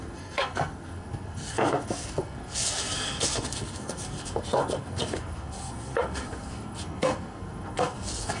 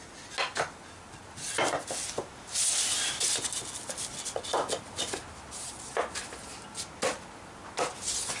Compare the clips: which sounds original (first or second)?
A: second